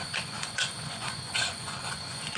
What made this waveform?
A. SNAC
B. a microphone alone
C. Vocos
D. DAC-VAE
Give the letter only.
C